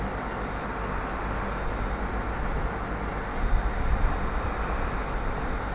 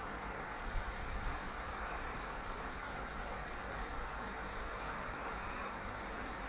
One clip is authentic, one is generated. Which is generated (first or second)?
second